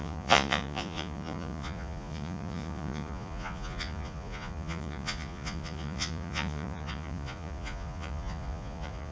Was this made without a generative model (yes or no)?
no